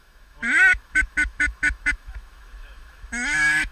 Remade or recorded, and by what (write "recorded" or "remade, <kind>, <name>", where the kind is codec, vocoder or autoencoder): remade, autoencoder, DAC-VAE